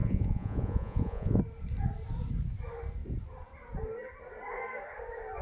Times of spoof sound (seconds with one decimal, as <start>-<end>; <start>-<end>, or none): 0.0-1.4